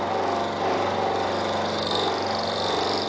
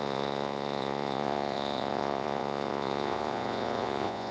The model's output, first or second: second